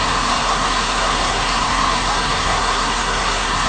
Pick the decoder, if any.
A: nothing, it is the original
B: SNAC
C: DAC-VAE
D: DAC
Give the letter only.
B